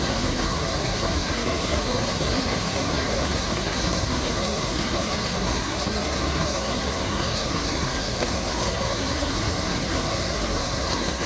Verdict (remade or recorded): remade